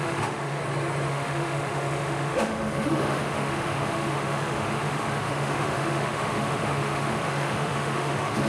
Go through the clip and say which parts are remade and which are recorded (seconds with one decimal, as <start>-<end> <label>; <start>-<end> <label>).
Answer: 0.0-0.6 remade; 0.6-1.1 recorded; 1.1-8.5 remade